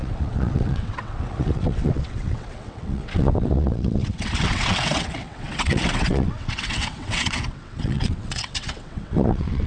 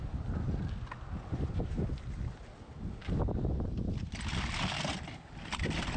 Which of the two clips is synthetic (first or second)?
first